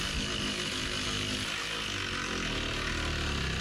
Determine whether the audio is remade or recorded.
recorded